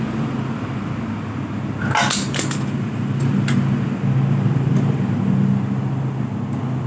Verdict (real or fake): real